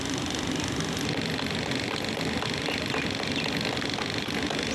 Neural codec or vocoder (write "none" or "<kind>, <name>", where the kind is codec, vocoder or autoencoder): none